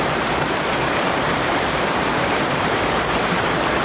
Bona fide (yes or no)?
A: no